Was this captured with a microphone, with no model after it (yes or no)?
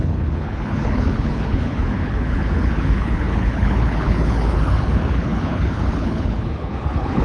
no